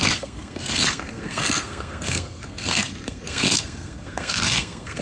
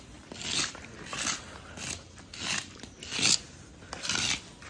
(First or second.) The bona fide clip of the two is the second